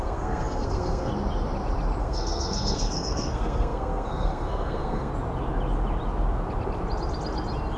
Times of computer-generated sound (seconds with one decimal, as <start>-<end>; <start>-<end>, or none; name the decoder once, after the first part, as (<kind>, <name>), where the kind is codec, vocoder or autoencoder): 0.0-1.1 (codec, SNAC); 2.0-5.1